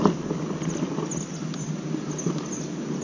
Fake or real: real